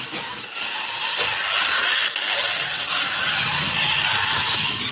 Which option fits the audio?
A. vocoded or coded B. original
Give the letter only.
B